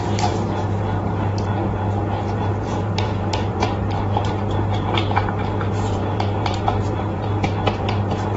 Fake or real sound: fake